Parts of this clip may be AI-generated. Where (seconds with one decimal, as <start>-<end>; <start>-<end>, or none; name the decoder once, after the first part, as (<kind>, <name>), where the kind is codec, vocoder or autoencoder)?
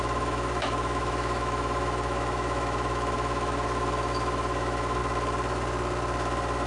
0.0-5.0 (autoencoder, DAC-VAE)